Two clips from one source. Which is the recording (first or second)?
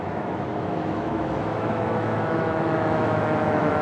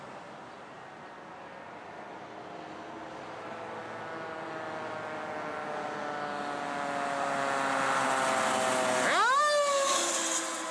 second